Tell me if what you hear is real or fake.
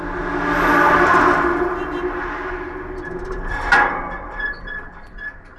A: real